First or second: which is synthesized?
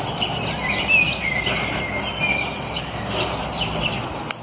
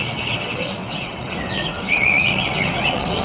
second